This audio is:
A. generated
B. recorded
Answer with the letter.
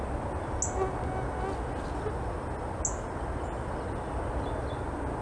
B